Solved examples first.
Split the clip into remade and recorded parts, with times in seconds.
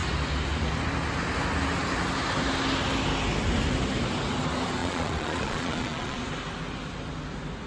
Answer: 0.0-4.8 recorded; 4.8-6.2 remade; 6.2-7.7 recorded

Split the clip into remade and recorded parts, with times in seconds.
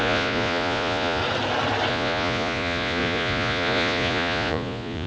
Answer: 0.0-1.2 remade; 1.2-1.9 recorded; 1.9-5.1 remade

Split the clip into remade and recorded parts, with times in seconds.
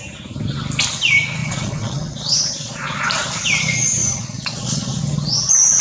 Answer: 0.0-1.4 recorded; 1.4-3.1 remade; 3.1-4.0 recorded; 4.0-4.9 remade; 4.9-5.8 recorded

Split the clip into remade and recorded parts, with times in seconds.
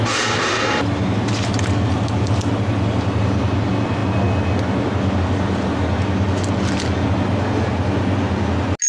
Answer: 0.0-8.9 recorded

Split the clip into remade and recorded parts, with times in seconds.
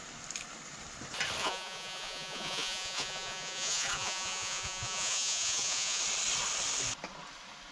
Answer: 0.0-1.4 recorded; 1.4-6.0 remade; 6.0-7.7 recorded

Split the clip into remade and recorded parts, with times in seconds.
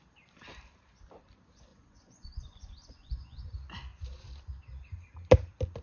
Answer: 0.0-1.7 recorded; 1.7-3.5 remade; 3.5-5.8 recorded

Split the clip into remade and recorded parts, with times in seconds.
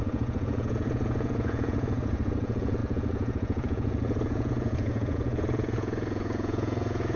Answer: 0.0-7.2 remade